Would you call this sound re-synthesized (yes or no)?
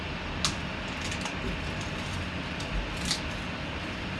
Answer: no